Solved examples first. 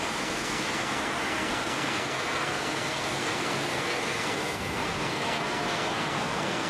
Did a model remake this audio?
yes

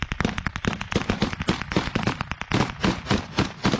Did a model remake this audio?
no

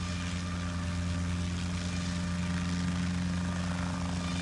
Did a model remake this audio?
no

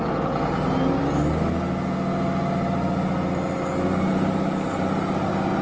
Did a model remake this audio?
no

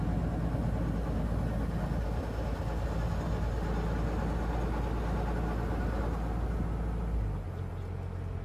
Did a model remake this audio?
no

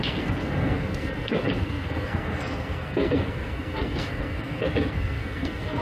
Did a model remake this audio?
yes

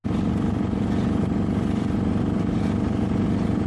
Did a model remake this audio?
no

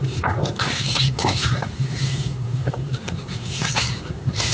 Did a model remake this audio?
yes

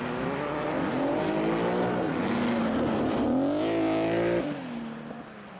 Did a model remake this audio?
no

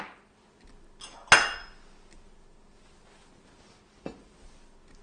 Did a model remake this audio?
no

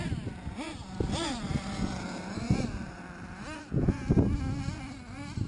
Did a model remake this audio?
no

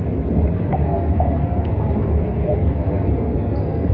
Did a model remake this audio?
yes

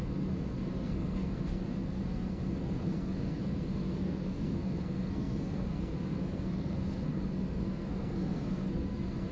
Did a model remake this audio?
yes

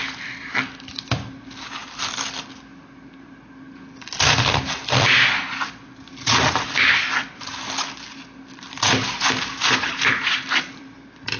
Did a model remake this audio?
no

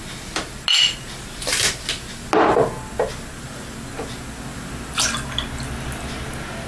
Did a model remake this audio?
no